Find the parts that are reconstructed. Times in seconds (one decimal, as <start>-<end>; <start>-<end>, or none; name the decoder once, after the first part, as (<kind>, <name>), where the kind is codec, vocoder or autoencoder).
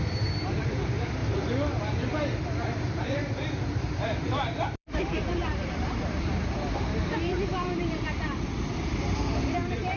0.0-1.2 (vocoder, BigVGAN v2); 1.8-10.0